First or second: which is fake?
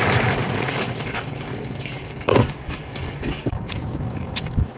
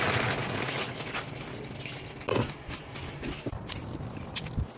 first